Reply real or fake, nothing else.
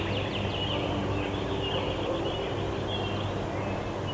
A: real